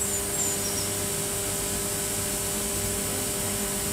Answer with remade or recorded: recorded